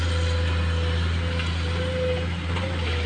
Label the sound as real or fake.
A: real